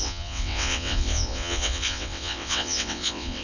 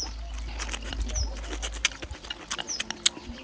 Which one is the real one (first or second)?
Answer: second